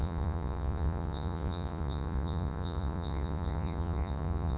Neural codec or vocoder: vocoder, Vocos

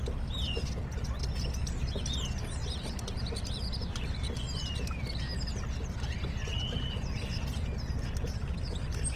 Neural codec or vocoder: none